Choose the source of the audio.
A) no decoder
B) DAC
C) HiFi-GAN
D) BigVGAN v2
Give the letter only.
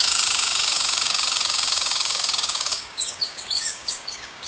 B